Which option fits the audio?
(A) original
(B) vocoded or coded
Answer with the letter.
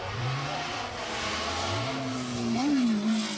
A